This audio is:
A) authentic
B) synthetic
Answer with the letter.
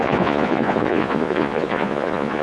B